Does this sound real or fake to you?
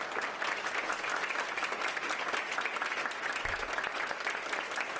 real